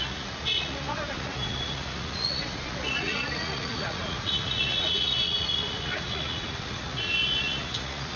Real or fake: fake